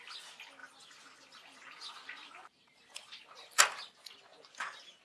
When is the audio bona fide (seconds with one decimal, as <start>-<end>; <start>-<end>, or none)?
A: 0.0-0.6; 3.6-4.3